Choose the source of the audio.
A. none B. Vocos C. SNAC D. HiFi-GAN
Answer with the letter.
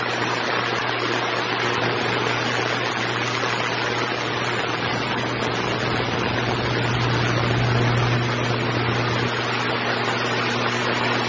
A